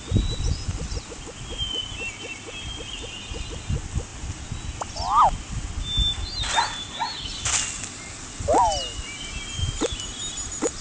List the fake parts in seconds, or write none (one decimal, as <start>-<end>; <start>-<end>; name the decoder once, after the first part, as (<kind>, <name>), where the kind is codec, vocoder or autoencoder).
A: none